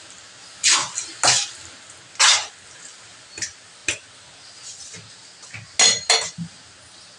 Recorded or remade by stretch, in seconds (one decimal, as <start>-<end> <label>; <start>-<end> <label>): 0.0-7.2 recorded